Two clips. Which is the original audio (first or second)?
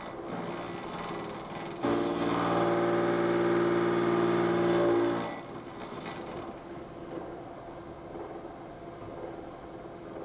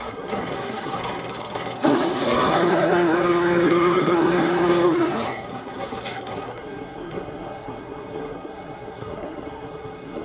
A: first